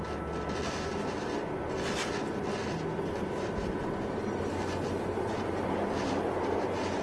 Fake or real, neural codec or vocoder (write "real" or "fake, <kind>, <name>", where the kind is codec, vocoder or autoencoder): real